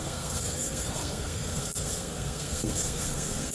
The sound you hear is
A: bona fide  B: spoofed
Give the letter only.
B